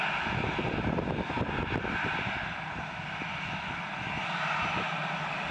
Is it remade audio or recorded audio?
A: recorded